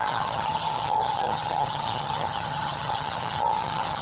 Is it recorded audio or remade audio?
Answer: remade